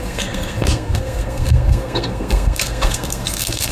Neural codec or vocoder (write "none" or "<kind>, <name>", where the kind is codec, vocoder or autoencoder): codec, SNAC